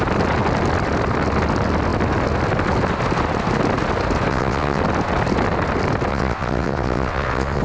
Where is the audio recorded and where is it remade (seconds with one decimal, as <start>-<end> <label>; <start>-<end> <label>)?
0.0-4.3 recorded; 4.3-4.8 remade; 4.8-6.1 recorded; 6.1-7.6 remade